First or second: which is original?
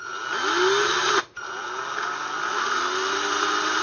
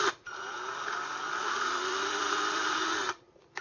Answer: first